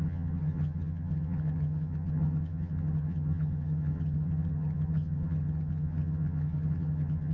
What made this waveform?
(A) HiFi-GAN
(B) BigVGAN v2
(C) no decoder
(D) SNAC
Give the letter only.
A